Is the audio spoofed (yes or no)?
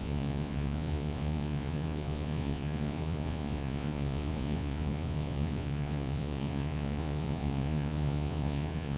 yes